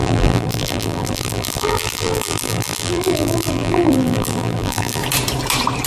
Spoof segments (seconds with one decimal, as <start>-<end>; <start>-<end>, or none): 0.0-5.0